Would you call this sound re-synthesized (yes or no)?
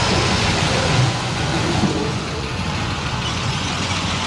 yes